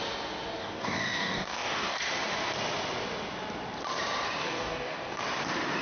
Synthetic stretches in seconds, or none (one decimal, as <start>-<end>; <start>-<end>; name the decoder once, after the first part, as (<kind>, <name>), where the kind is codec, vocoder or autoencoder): 0.6-2.0 (codec, DAC); 4.4-5.2